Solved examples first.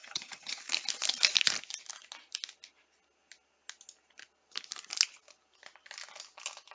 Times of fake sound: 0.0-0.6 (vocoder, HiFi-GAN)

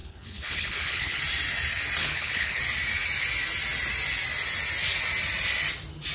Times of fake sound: 0.0-1.2 (codec, HILCodec); 2.0-2.6

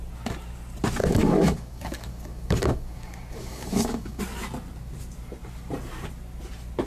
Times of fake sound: 1.0-4.2 (codec, DAC)

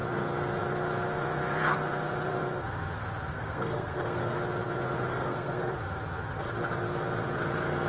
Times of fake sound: 3.3-4.4 (codec, SNAC); 5.1-5.7

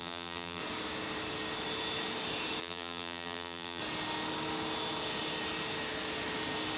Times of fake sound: 0.0-0.6 (vocoder, BigVGAN v2); 2.6-3.8

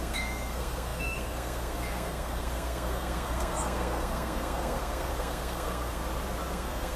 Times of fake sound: 0.0-6.0 (codec, SNAC); 6.5-7.0